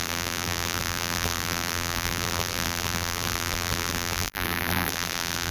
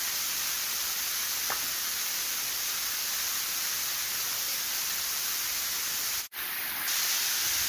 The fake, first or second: first